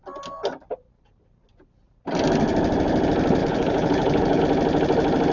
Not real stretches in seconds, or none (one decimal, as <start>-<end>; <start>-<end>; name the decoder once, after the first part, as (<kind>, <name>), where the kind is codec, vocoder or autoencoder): 3.4-4.4 (codec, HILCodec)